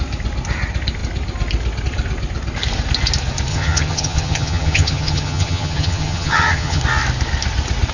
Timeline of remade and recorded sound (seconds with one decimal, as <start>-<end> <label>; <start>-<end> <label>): 0.0-3.5 recorded; 3.5-6.8 remade; 6.8-7.9 recorded